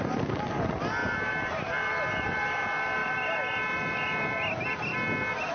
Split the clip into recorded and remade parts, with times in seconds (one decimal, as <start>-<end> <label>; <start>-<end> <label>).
0.0-5.5 recorded